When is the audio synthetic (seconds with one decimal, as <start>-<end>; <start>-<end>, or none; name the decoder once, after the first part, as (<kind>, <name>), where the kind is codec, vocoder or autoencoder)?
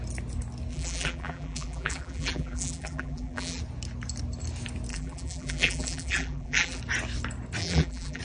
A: 0.7-3.6 (vocoder, BigVGAN v2); 4.9-6.8; 7.6-8.2